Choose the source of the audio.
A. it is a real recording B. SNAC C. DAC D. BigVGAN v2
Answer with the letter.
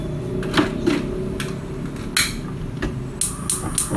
A